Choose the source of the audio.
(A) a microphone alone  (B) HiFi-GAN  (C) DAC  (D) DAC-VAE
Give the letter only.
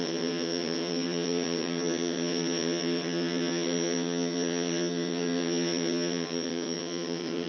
B